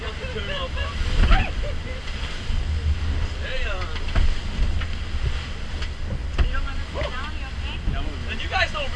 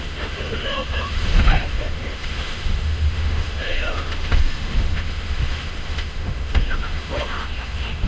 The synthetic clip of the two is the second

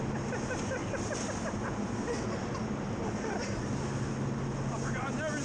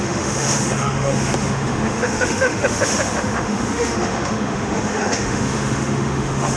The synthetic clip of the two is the second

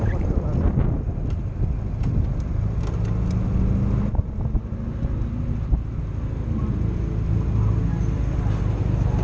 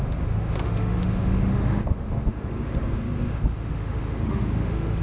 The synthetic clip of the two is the second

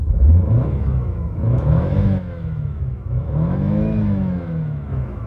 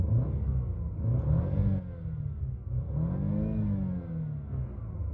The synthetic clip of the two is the first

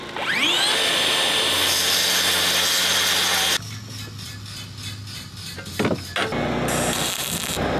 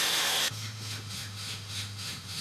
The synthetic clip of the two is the second